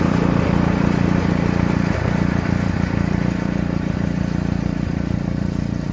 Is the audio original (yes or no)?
no